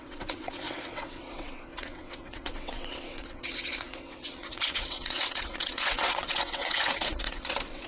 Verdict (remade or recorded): remade